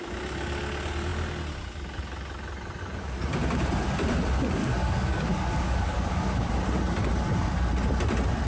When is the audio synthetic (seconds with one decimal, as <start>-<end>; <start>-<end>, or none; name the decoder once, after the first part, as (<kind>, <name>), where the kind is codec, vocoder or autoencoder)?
4.6-6.5 (codec, DAC)